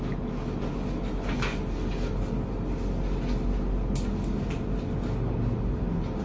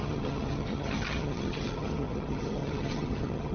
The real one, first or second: first